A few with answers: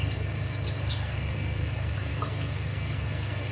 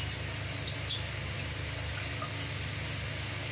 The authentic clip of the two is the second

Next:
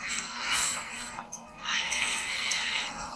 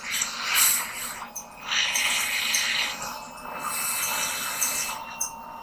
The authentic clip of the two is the second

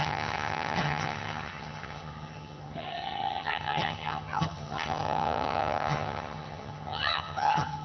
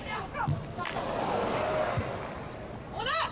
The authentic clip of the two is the second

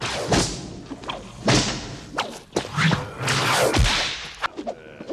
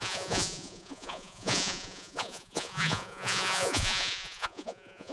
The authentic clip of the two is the first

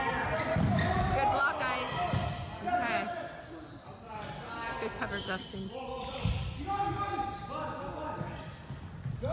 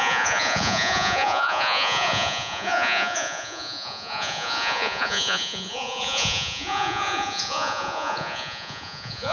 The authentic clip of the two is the first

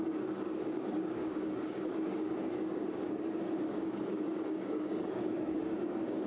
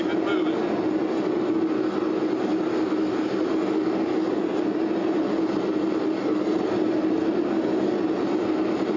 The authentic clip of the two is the second